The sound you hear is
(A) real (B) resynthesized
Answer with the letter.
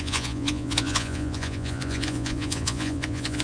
B